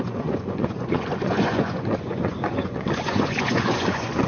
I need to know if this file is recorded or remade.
remade